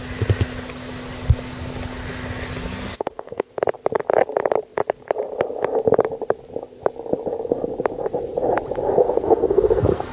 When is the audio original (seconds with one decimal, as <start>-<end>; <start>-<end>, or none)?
0.0-2.9; 3.5-9.0